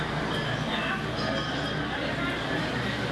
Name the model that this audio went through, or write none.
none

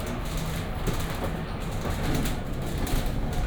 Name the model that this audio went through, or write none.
none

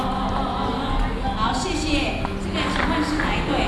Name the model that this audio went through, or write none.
none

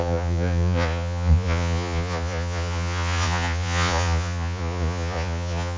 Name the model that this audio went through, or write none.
vocoder, Vocos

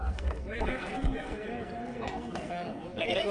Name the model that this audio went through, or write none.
codec, SNAC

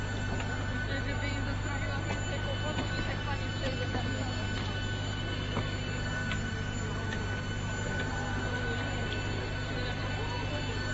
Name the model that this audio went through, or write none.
none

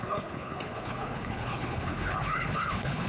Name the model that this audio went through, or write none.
codec, HILCodec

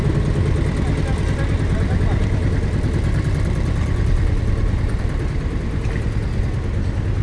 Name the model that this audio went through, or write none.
none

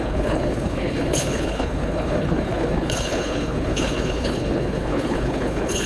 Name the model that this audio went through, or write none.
codec, HILCodec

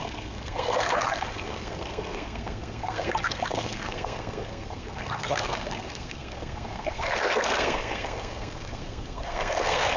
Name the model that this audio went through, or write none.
codec, SNAC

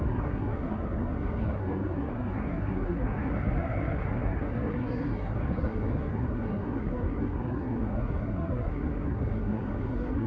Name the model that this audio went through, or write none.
codec, SNAC